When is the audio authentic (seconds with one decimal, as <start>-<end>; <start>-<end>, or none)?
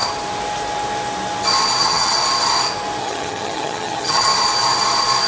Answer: 0.0-1.8; 2.2-3.0; 4.3-5.3